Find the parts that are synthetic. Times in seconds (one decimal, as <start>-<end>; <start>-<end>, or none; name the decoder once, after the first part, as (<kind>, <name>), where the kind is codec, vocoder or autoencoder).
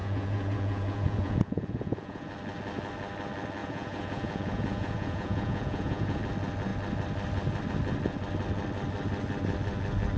0.0-2.3 (vocoder, Vocos); 3.6-6.2